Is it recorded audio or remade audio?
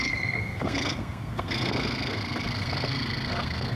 remade